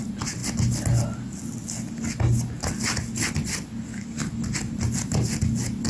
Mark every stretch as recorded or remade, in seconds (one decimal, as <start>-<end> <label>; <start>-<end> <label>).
0.0-5.9 recorded